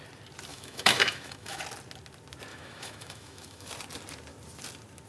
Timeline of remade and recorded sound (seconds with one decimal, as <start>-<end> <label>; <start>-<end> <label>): 0.0-0.5 recorded; 0.5-1.6 remade; 1.6-2.5 recorded; 2.5-3.7 remade; 3.7-5.1 recorded